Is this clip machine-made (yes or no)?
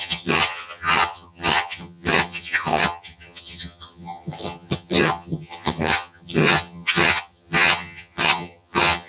yes